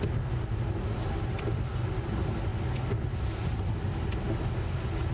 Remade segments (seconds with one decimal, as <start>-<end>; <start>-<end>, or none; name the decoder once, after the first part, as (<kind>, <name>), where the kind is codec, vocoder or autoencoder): none